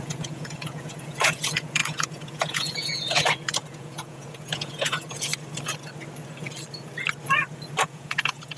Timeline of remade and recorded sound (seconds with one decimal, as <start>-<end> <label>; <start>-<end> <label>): 0.0-5.3 remade; 5.3-7.8 recorded; 7.8-8.6 remade